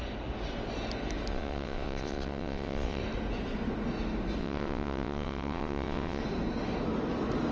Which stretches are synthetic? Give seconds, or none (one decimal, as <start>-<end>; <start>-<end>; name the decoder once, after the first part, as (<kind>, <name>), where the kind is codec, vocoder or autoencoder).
1.3-3.0 (vocoder, WaveNeXt); 4.4-6.2